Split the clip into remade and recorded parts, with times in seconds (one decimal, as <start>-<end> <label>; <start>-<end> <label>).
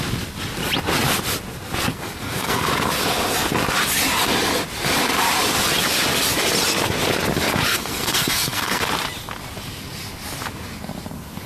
0.0-1.9 recorded; 1.9-2.7 remade; 2.7-7.7 recorded; 7.7-8.8 remade; 8.8-11.5 recorded